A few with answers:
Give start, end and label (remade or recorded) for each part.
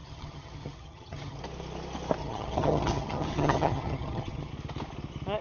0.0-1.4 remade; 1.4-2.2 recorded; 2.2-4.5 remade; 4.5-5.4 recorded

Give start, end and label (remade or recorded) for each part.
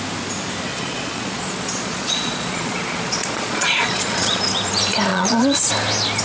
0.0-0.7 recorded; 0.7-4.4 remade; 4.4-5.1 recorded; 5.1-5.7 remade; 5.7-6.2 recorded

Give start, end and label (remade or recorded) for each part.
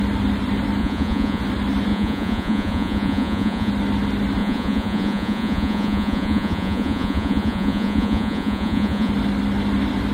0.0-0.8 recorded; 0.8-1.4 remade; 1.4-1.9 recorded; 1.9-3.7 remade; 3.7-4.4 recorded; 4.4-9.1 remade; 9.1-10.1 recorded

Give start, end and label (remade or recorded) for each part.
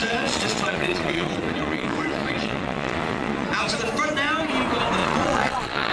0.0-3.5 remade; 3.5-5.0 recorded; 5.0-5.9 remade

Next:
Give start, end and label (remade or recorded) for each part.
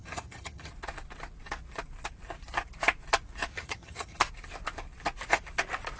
0.0-0.7 remade; 0.7-3.5 recorded; 3.5-4.2 remade; 4.2-6.0 recorded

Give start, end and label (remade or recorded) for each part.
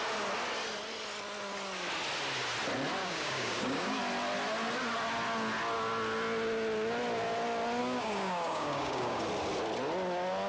0.0-3.0 recorded; 3.0-4.0 remade; 4.0-7.8 recorded; 7.8-9.2 remade; 9.2-10.5 recorded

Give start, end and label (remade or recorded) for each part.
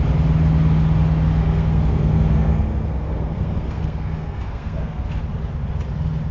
0.0-1.4 recorded; 1.4-5.2 remade; 5.2-6.3 recorded